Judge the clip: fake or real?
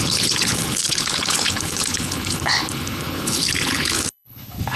fake